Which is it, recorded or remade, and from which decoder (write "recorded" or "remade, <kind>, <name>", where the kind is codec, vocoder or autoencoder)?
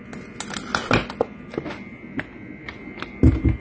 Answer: recorded